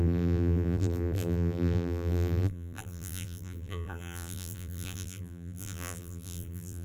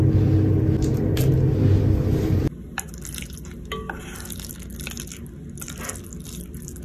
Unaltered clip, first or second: second